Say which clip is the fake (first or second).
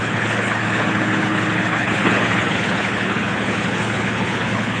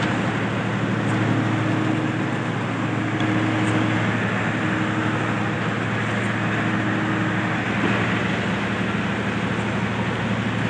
first